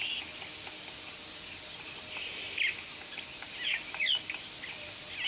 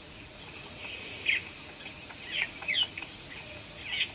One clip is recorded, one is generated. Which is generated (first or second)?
second